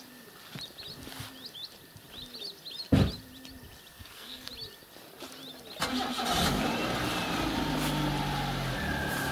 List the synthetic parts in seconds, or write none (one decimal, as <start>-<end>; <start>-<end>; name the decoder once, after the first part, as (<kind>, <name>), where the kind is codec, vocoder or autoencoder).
3.9-4.5 (codec, SNAC)